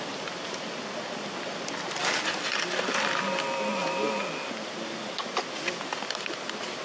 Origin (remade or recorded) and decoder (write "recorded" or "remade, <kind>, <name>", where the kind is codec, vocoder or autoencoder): recorded